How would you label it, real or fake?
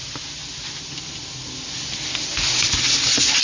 real